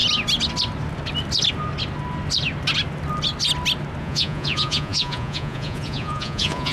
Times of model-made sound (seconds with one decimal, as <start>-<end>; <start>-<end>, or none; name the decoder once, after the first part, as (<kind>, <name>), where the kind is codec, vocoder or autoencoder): 4.0-6.7 (vocoder, Vocos)